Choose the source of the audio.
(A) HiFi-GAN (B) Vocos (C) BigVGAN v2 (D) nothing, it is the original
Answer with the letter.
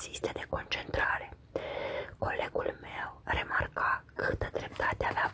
D